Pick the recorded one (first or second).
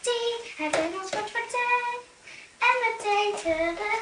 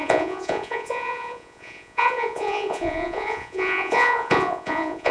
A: first